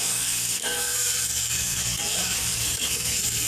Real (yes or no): no